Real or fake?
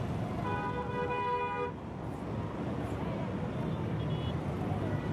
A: real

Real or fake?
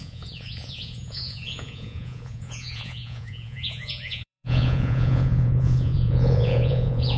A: fake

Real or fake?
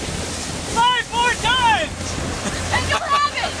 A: real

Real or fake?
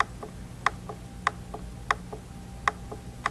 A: real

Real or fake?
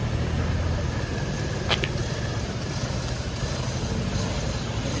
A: real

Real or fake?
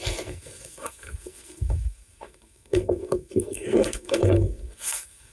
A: fake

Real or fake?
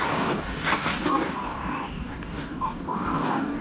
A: fake